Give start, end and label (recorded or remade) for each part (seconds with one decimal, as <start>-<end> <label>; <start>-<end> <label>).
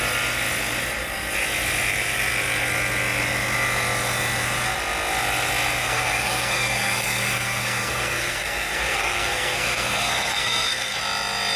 0.0-5.8 recorded; 5.8-11.0 remade; 11.0-11.6 recorded